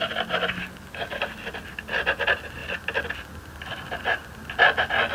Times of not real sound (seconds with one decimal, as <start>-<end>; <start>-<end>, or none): 0.6-1.2